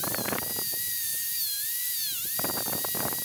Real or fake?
real